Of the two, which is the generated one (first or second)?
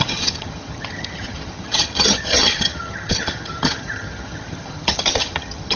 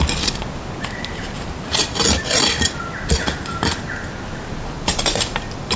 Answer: first